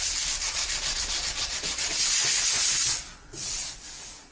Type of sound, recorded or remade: remade